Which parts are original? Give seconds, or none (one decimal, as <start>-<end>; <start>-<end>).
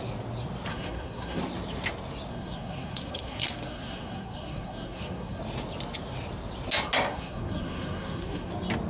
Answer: 0.0-0.7; 1.4-2.3; 5.4-7.1; 8.5-8.9